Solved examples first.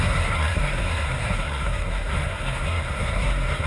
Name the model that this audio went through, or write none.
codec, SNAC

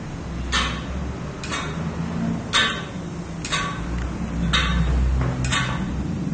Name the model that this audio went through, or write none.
none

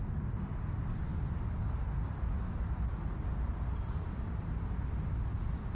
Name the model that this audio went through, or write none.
none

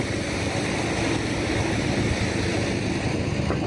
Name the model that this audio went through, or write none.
none